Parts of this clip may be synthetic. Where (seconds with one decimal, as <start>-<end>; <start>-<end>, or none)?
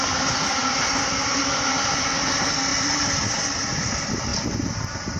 2.7-3.9